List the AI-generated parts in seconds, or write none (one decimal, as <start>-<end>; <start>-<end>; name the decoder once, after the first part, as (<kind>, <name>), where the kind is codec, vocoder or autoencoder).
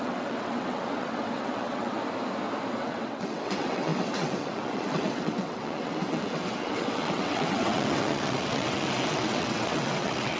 0.0-2.0 (vocoder, WaveNeXt); 2.7-10.4